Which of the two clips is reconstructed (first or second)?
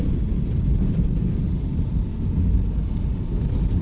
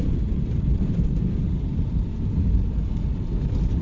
second